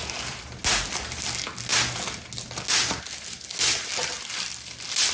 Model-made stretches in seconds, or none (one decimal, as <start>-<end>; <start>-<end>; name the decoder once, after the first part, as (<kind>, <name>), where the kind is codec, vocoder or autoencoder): none